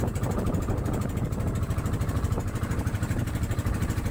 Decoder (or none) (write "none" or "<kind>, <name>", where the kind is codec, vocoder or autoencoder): vocoder, BigVGAN v2